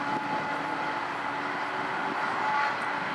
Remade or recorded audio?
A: recorded